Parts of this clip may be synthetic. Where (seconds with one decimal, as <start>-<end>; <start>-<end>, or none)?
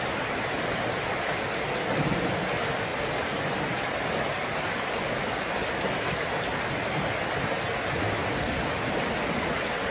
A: none